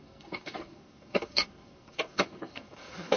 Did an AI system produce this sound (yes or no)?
yes